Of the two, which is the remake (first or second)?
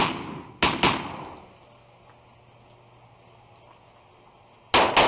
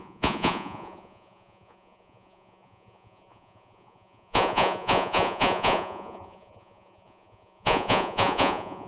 second